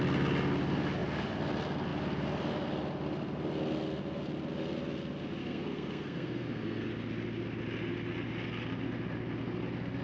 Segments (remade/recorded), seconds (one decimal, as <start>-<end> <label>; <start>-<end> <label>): 0.0-5.4 recorded; 5.4-6.9 remade; 6.9-10.0 recorded